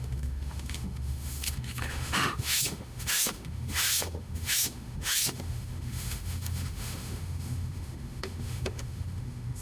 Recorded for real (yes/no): no